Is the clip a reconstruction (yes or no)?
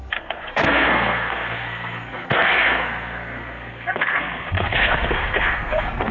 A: yes